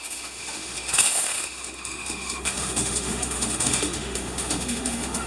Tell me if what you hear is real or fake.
fake